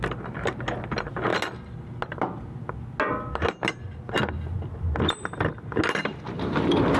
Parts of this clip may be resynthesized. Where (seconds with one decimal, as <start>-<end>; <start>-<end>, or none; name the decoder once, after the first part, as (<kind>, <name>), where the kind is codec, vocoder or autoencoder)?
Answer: none